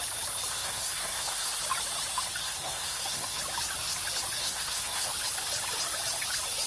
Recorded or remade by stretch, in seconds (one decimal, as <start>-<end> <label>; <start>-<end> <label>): 0.0-0.5 recorded; 0.5-1.6 remade; 1.6-2.4 recorded; 2.4-3.4 remade; 3.4-4.4 recorded; 4.4-5.1 remade; 5.1-6.7 recorded